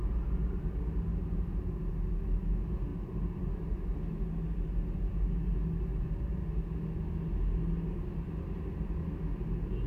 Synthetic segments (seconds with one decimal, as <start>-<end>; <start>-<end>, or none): 2.9-3.5